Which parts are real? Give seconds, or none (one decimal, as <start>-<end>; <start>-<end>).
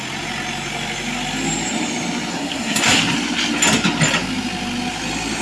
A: 0.0-2.3; 3.0-5.4